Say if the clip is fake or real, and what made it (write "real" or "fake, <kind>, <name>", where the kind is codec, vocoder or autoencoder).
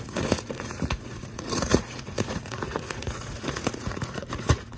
fake, vocoder, Vocos